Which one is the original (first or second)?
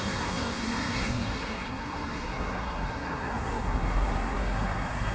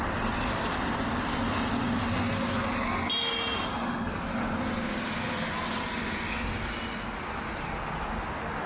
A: second